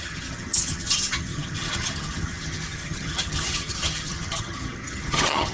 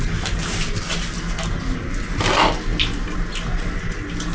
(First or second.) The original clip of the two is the second